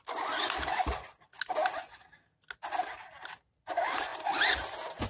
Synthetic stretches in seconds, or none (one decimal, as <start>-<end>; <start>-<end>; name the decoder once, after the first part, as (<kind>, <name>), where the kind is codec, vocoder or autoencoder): none